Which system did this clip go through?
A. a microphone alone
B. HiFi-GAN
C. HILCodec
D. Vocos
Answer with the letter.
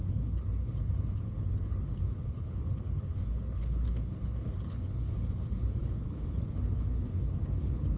C